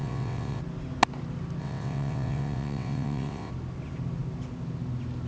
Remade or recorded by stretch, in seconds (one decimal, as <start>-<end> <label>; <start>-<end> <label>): 0.0-0.6 remade; 0.6-1.6 recorded; 1.6-3.5 remade; 3.5-5.3 recorded

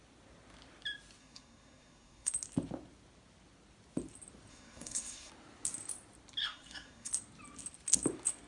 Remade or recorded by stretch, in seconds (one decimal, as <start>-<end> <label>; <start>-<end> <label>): 0.0-1.2 recorded; 1.2-2.3 remade; 2.3-4.5 recorded; 4.5-5.3 remade; 5.3-6.4 recorded; 6.4-7.1 remade; 7.1-8.5 recorded

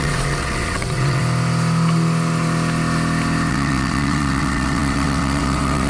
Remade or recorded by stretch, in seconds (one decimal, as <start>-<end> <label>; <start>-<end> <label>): 0.0-1.2 remade; 1.2-3.5 recorded; 3.5-5.9 remade

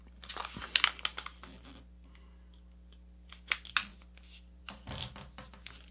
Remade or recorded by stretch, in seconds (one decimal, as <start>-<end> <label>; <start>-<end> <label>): 0.0-5.9 recorded

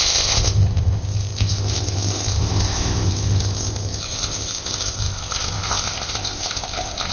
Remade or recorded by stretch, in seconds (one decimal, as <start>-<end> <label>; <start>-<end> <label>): 0.0-7.1 remade